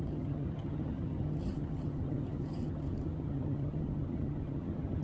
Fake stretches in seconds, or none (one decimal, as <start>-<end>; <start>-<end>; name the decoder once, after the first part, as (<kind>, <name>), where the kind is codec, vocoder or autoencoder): 0.0-5.0 (vocoder, HiFi-GAN)